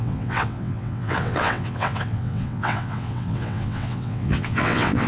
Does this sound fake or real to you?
fake